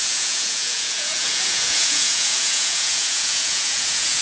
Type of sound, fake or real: fake